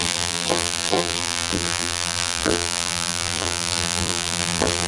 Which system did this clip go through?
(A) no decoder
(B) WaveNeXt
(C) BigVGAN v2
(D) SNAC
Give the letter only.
C